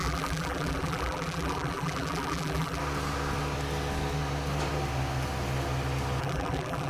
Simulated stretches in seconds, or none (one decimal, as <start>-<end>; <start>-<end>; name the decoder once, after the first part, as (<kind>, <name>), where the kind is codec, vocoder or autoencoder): 0.0-2.8 (vocoder, BigVGAN v2); 6.2-6.9